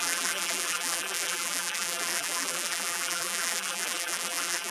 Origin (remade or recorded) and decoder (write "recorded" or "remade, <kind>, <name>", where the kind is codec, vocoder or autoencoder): remade, vocoder, BigVGAN v2